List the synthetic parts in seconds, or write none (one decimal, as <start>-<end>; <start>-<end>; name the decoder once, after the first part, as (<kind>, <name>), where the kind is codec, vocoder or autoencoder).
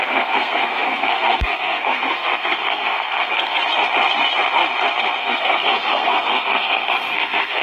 0.0-3.6 (codec, SNAC); 5.2-7.6